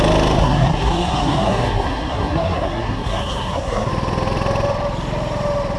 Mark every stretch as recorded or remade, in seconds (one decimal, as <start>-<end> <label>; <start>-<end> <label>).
0.0-0.4 recorded; 0.4-3.9 remade; 3.9-5.8 recorded